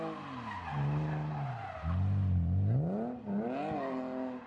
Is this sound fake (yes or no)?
no